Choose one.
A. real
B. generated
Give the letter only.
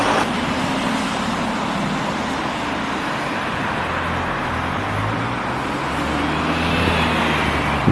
A